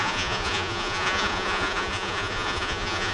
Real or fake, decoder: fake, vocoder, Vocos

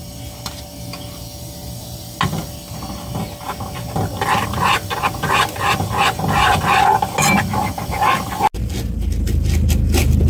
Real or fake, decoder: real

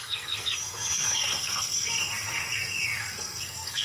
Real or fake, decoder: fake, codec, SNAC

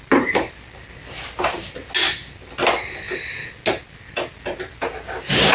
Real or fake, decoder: real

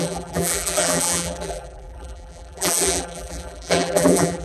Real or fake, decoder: fake, vocoder, BigVGAN v2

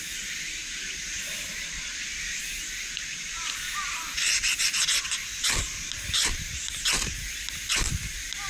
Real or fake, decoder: real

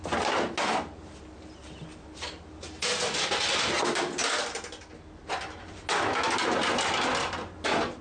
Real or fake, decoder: real